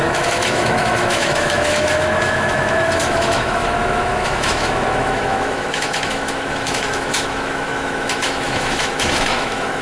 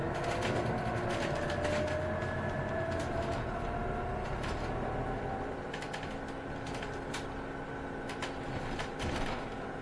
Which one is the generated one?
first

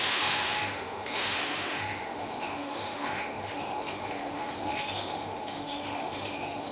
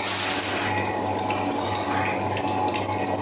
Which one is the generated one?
first